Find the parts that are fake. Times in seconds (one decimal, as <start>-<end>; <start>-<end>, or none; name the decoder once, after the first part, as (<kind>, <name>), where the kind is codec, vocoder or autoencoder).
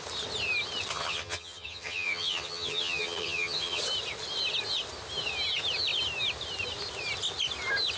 0.9-3.8 (vocoder, HiFi-GAN)